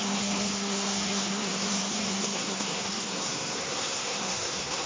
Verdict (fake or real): fake